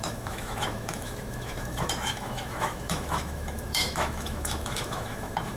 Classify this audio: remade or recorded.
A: remade